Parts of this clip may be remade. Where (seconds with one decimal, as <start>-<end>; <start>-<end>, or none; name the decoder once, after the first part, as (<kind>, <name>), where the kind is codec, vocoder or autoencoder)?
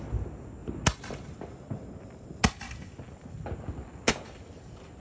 none